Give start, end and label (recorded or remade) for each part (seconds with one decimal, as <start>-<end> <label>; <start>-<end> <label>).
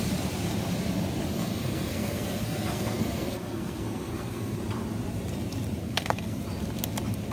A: 0.0-1.3 recorded; 1.3-4.6 remade; 4.6-5.8 recorded; 5.8-6.4 remade; 6.4-7.3 recorded